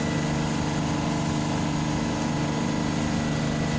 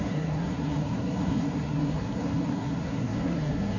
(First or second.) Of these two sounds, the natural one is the first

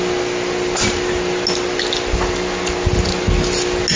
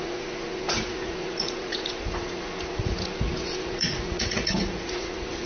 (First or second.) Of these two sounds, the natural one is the first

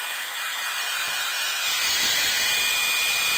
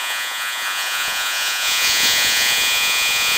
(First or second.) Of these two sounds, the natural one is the first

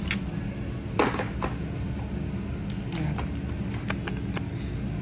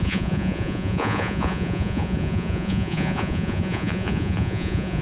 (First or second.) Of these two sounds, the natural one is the first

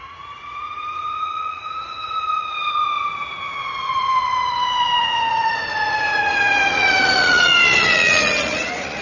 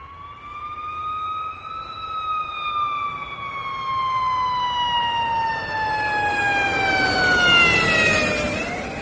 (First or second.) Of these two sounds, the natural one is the second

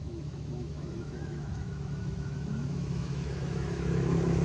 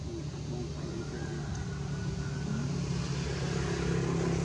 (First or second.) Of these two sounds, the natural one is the second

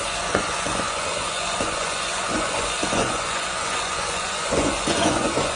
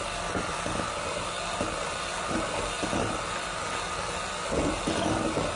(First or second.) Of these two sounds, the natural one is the second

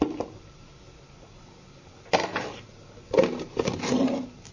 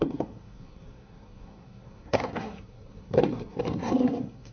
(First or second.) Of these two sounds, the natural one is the first